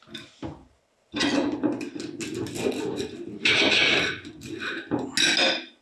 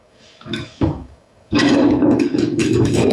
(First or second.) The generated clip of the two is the second